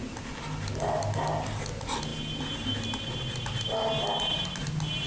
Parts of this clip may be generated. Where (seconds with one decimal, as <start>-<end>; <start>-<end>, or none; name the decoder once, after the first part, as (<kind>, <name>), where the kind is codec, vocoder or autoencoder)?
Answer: none

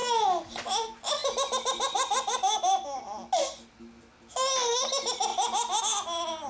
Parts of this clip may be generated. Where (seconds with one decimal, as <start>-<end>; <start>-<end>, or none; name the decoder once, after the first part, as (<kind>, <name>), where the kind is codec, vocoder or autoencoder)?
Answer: none

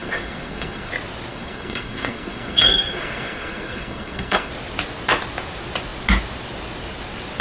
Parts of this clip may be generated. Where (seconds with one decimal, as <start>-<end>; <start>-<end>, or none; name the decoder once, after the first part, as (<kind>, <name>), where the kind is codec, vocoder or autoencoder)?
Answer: 0.0-0.9 (codec, SNAC); 1.3-4.5

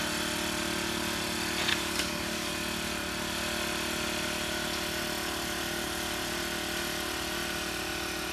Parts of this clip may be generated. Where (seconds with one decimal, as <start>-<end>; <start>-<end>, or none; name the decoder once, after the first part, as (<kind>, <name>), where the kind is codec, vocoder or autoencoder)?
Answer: 1.7-2.5 (codec, DAC)

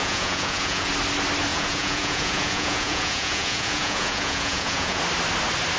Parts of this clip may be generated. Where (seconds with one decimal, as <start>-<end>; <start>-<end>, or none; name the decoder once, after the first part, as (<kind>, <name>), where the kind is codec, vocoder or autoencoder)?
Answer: 0.0-0.9 (vocoder, Vocos); 1.5-5.0

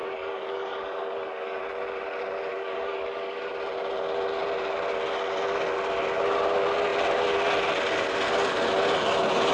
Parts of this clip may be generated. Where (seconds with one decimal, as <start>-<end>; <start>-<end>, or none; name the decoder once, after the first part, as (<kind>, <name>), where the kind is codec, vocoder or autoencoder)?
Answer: 0.0-1.6 (codec, DAC); 2.5-3.4

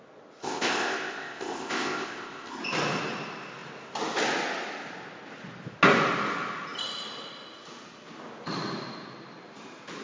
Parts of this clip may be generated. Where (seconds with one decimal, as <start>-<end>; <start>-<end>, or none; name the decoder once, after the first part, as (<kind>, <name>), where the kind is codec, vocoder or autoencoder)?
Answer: 0.4-2.6 (codec, ZipCodec)